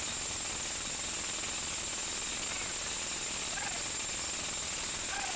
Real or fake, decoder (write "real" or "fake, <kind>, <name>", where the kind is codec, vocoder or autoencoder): real